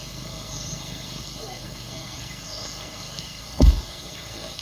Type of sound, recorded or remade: remade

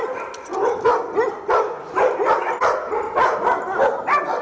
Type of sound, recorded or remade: recorded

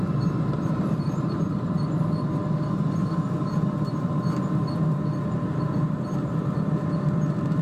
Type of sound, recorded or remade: remade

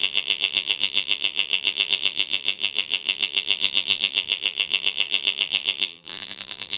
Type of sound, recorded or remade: remade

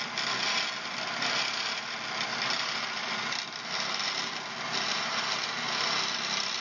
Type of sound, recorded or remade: recorded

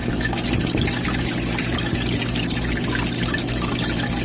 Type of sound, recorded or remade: recorded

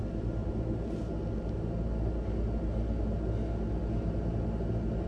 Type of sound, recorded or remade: recorded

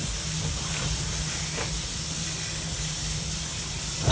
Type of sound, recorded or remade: recorded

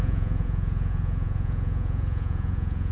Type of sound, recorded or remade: remade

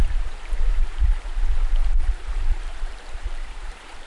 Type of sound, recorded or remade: remade